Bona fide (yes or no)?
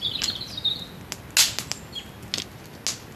yes